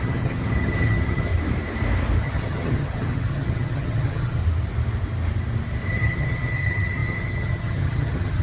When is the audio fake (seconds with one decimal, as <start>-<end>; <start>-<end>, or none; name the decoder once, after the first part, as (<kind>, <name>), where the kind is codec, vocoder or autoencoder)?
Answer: 0.0-1.3 (vocoder, HiFi-GAN); 2.2-4.4; 5.9-8.4